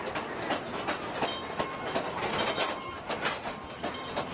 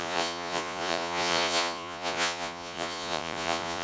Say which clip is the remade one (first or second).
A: second